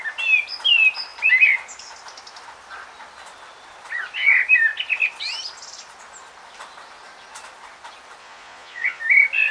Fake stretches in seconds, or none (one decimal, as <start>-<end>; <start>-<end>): 8.2-9.0